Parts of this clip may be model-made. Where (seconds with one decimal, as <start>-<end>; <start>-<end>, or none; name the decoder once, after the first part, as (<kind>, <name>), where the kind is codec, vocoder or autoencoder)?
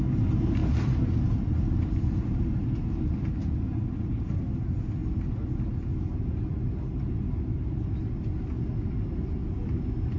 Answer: none